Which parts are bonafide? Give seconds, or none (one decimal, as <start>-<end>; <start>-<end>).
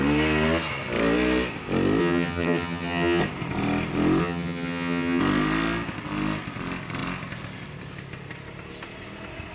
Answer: 0.0-2.0; 3.2-4.2; 5.2-9.5